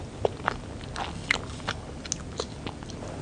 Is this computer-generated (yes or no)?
no